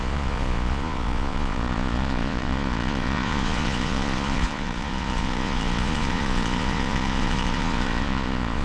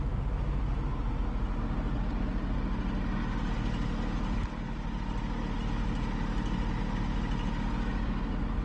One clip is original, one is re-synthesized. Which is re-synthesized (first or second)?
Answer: first